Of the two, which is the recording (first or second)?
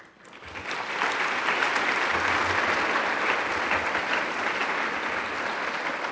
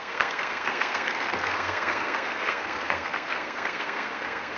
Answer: first